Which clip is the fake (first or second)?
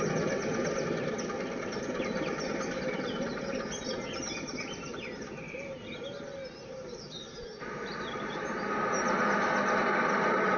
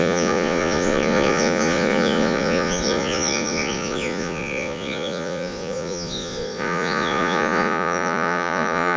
second